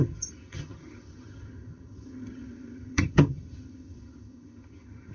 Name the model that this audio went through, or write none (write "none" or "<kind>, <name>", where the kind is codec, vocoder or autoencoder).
vocoder, HiFi-GAN